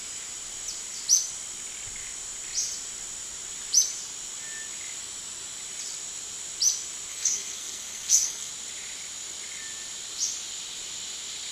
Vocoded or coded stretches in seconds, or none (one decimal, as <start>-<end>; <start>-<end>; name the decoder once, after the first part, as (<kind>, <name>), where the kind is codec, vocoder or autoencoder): 7.1-8.5 (codec, SNAC)